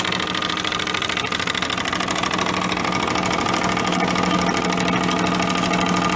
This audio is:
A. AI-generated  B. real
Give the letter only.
B